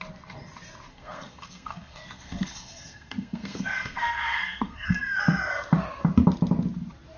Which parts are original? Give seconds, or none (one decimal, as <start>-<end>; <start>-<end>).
0.0-0.9; 5.2-7.2